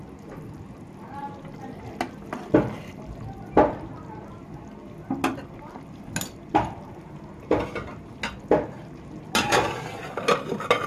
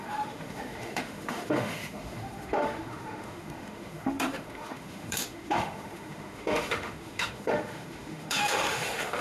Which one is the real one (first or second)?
first